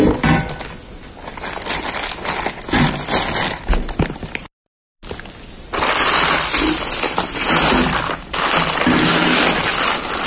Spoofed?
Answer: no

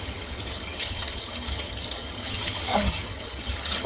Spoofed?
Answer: yes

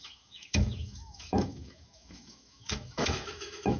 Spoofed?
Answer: yes